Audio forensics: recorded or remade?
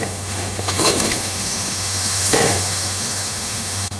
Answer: remade